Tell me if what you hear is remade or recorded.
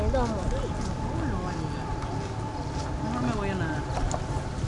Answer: recorded